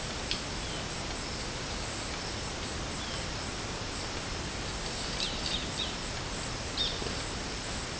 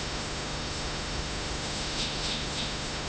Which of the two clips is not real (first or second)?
second